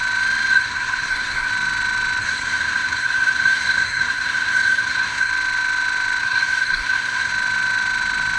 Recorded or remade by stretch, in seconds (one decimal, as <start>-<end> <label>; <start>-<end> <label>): 0.0-0.5 recorded; 0.5-1.5 remade; 1.5-2.2 recorded; 2.2-5.3 remade; 5.3-6.2 recorded; 6.2-7.3 remade; 7.3-8.4 recorded